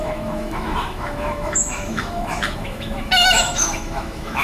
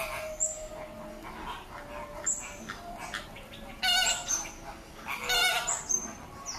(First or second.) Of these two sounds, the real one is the second